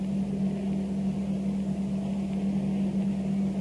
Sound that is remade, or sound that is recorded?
recorded